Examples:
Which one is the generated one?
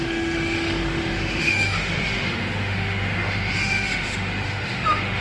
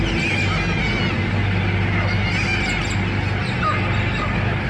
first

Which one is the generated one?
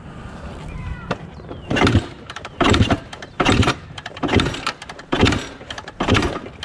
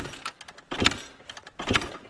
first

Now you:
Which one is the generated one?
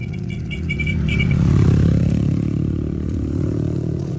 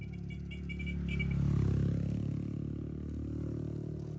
first